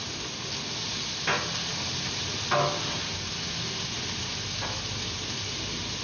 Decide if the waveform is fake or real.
real